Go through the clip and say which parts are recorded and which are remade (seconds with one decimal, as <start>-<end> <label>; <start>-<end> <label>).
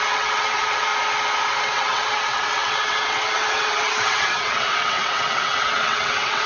0.0-0.9 remade; 0.9-1.6 recorded; 1.6-6.5 remade